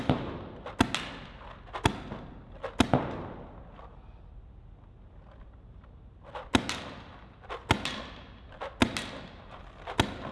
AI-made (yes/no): no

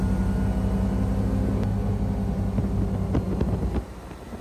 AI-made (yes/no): no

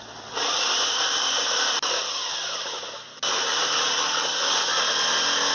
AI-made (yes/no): no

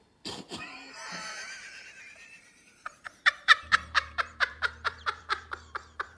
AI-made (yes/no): yes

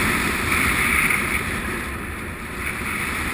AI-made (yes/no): yes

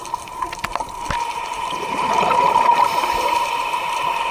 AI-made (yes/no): yes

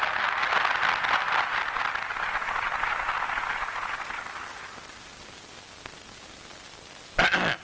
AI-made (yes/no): no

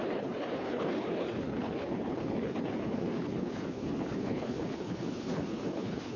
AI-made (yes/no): yes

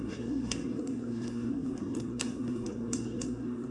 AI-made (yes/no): yes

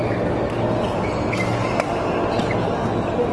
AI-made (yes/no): no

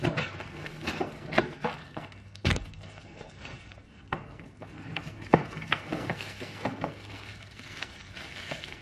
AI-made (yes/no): yes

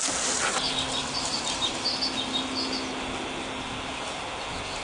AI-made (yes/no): no